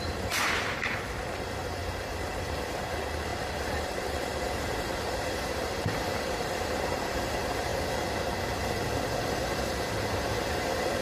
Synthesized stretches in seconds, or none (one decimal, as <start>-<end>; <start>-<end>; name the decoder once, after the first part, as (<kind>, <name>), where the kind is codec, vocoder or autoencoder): 0.0-7.7 (vocoder, BigVGAN v2); 9.2-11.0